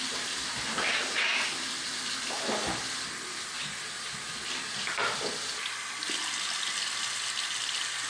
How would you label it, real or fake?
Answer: real